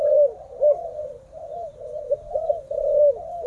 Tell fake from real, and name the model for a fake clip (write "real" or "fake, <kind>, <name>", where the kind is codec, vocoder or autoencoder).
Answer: real